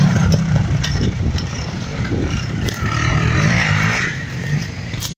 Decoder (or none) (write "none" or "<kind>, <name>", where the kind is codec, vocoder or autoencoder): vocoder, BigVGAN v2